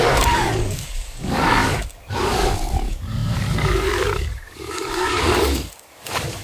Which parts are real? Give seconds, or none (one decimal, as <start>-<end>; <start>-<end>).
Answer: none